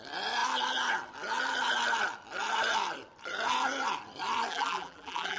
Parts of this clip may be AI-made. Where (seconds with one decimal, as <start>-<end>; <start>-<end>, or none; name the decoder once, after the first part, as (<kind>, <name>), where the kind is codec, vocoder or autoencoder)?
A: 4.5-5.4 (vocoder, BigVGAN v2)